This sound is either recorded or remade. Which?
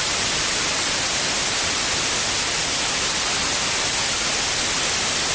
recorded